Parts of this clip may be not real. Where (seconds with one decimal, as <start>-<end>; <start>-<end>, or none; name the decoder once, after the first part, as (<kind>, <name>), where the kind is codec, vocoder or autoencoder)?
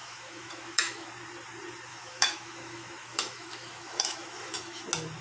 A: 0.0-1.1 (autoencoder, DAC-VAE); 1.9-4.8